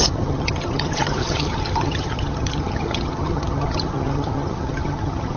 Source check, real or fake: fake